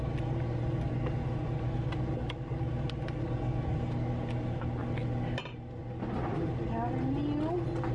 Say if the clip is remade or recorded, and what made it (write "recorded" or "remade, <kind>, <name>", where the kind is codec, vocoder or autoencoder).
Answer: recorded